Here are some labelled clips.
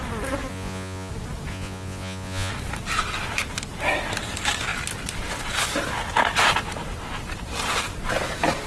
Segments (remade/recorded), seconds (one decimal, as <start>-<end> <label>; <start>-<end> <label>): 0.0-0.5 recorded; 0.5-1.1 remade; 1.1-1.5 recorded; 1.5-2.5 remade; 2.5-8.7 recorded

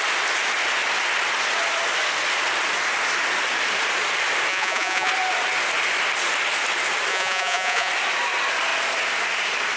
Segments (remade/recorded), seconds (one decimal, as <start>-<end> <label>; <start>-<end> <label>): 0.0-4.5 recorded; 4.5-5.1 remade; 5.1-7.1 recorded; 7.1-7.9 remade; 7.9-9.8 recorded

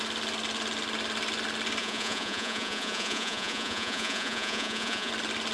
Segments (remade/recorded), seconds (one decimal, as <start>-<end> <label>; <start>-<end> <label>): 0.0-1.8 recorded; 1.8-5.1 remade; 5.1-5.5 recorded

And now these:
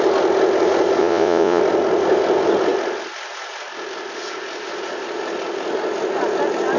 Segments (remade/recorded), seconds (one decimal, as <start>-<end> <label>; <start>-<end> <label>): 0.0-1.0 recorded; 1.0-1.6 remade; 1.6-6.8 recorded